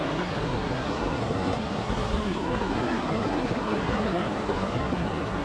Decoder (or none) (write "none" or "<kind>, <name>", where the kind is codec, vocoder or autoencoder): codec, SNAC